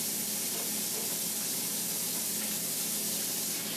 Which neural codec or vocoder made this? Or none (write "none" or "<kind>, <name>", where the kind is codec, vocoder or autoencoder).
none